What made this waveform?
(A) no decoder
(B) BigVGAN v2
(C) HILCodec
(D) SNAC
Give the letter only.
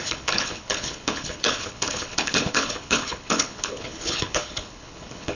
C